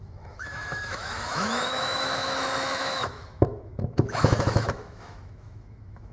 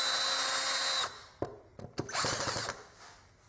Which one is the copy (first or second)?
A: first